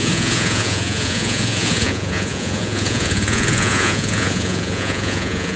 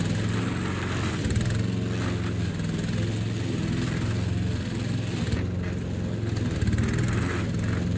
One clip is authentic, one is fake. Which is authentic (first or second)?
second